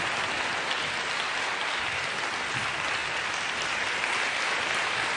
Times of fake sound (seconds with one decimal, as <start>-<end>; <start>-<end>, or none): none